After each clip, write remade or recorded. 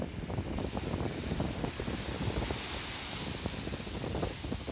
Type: recorded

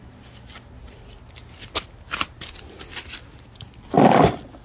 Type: recorded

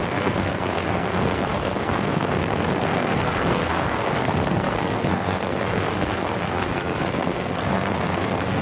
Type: remade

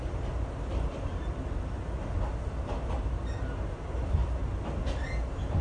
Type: recorded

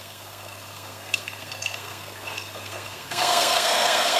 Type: remade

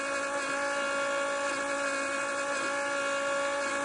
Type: recorded